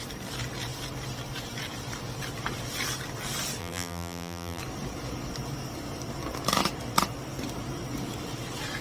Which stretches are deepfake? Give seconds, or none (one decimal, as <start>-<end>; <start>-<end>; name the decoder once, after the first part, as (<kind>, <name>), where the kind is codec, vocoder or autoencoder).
3.6-4.6 (vocoder, BigVGAN v2)